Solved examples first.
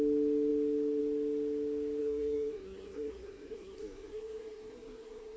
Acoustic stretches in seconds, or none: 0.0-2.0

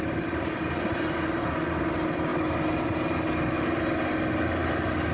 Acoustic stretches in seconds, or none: 0.0-5.1

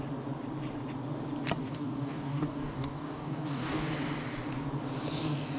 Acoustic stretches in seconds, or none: 0.0-1.6; 3.9-5.6

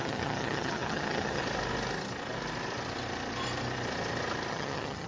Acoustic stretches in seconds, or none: 1.4-4.5

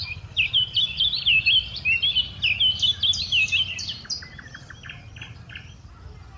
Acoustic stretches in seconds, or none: 1.4-3.1; 5.2-6.4

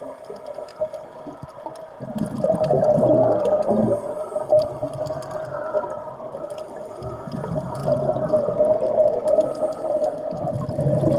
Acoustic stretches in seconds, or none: 0.0-11.2